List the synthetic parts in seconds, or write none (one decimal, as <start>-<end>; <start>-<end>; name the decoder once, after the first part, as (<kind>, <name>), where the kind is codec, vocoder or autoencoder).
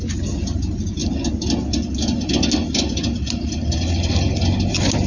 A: none